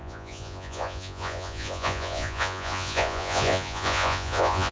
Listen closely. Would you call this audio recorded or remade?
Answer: remade